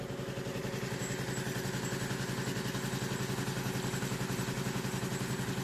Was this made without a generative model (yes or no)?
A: yes